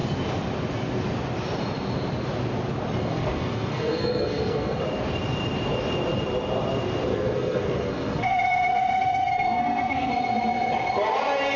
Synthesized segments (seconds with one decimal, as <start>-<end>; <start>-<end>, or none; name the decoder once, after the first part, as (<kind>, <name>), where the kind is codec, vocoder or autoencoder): 3.0-4.8 (codec, SNAC); 7.1-10.1

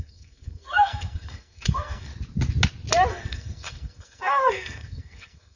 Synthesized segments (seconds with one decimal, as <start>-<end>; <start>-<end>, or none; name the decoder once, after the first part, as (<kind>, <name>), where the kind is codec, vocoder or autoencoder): 0.0-2.1 (codec, SNAC); 3.1-5.6

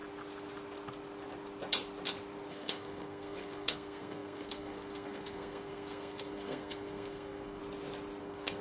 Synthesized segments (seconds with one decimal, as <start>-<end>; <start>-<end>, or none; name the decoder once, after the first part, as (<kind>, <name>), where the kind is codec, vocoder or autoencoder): 2.5-7.6 (codec, SNAC); 8.2-8.6

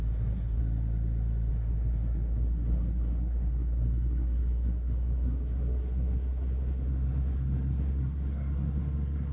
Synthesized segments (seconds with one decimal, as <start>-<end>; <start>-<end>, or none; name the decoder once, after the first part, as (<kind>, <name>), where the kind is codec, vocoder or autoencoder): 0.0-0.6 (codec, SNAC); 1.5-9.3

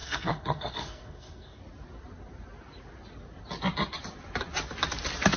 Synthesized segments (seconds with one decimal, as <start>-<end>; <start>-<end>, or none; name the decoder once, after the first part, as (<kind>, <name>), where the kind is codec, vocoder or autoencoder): 0.0-1.6 (codec, SNAC)

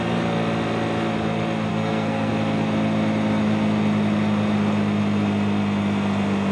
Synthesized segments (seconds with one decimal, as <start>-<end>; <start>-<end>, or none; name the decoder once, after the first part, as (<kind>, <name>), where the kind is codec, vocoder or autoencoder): 1.7-2.3 (codec, SNAC)

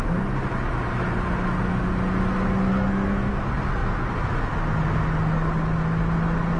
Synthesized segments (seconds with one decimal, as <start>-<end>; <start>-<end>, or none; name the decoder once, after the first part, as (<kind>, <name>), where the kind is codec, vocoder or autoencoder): 2.7-3.4 (codec, SNAC)

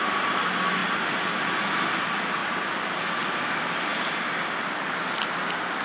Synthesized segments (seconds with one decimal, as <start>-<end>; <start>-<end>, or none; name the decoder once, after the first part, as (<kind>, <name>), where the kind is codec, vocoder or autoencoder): none